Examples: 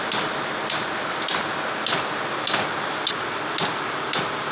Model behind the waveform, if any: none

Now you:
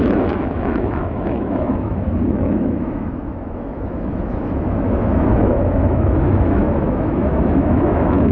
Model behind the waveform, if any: autoencoder, DAC-VAE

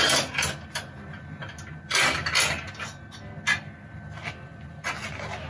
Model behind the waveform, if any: none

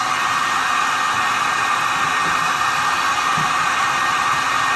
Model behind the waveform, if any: none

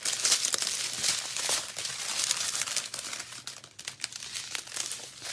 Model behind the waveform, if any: none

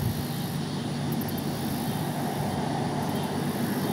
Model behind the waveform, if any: none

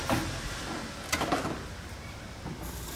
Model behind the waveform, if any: none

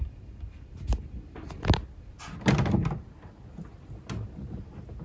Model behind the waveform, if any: none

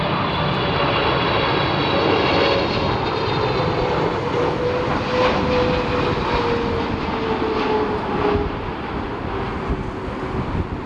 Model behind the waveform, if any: none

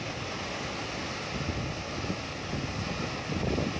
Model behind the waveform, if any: none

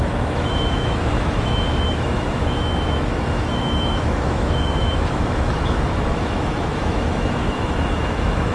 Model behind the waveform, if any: autoencoder, DAC-VAE